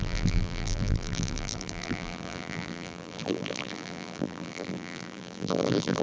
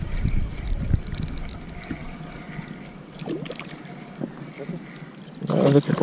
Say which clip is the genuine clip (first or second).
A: second